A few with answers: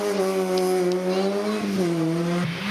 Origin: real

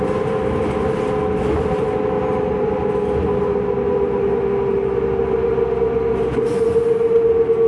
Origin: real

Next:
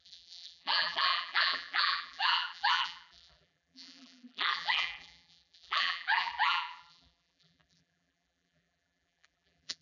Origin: fake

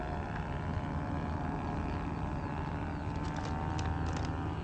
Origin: real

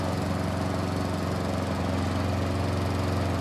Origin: real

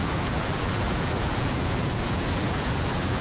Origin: fake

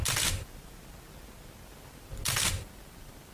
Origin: real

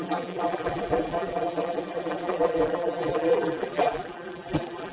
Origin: fake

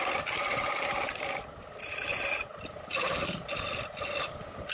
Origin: fake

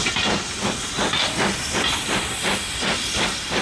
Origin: real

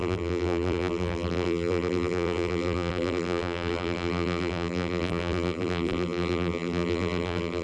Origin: fake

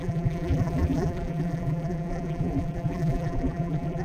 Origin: fake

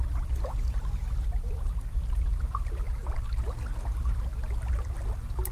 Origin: real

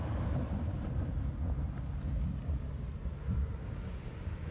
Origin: real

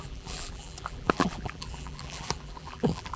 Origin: fake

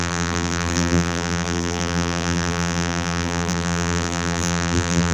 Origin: fake